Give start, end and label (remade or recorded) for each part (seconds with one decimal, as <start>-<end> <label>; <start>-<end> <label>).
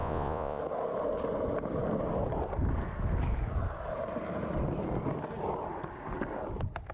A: 0.0-0.6 remade; 0.6-6.9 recorded